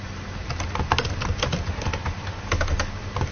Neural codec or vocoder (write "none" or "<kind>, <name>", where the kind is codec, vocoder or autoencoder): none